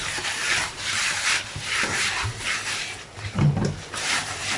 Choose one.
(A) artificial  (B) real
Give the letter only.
A